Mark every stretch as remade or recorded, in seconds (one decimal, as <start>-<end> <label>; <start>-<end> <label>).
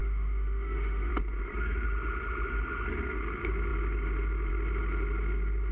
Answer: 0.0-1.1 remade; 1.1-5.7 recorded